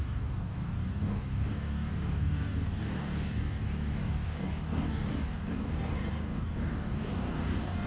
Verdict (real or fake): fake